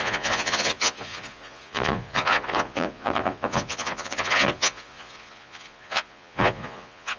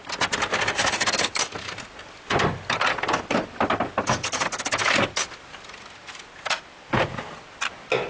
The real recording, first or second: second